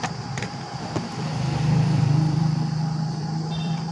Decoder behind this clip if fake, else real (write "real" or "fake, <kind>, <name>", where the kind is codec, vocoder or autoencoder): fake, vocoder, BigVGAN v2